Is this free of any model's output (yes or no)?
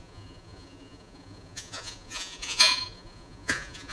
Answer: no